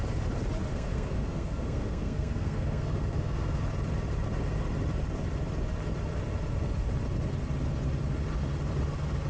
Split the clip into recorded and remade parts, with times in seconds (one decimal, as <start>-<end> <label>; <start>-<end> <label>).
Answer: 0.0-0.7 recorded; 0.7-3.6 remade; 3.6-9.3 recorded

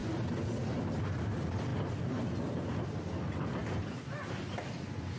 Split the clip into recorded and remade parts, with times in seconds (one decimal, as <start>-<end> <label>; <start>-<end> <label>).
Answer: 0.0-5.2 recorded

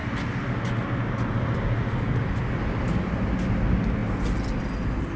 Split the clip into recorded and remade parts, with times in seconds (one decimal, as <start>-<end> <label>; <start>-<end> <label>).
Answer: 0.0-5.2 recorded